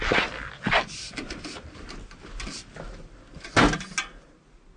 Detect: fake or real real